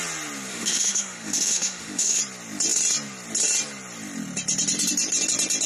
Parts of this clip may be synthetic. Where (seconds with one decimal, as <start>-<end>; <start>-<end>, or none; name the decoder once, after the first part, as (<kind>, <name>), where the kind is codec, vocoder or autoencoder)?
0.5-2.2 (autoencoder, DAC-VAE)